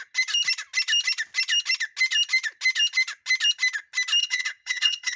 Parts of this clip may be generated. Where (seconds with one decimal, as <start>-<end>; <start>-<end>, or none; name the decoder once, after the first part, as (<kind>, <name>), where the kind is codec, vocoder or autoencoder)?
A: 4.2-5.2 (vocoder, WaveNeXt)